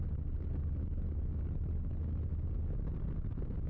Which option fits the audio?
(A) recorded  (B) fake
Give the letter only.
A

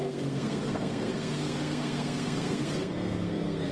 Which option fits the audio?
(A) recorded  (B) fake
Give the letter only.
B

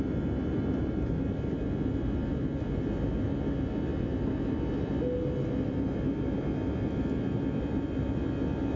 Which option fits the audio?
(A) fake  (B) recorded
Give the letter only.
B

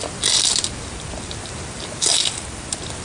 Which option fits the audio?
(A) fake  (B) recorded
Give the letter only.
B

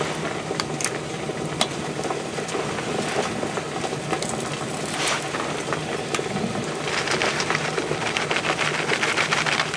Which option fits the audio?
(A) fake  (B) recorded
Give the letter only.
B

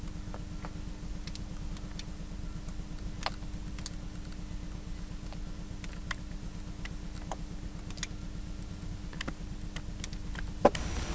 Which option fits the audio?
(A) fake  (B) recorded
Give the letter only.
B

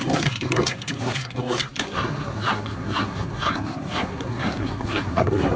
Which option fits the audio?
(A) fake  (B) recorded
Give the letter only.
A